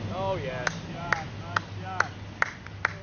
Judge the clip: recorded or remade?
recorded